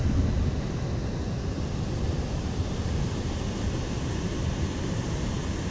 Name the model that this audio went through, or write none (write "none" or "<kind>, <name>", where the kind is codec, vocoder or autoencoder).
none